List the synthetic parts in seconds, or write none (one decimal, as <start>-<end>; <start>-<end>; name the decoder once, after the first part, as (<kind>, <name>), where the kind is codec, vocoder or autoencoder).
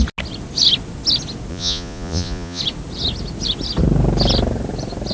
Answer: 1.5-2.6 (vocoder, Vocos)